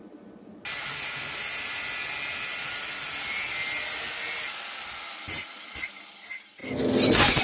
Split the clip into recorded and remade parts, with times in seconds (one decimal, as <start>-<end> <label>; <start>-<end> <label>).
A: 0.0-7.4 recorded